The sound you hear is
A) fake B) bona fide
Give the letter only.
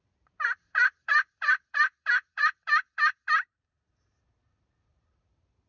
A